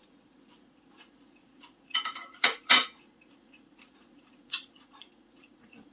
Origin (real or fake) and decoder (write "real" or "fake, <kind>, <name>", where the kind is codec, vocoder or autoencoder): fake, vocoder, Vocos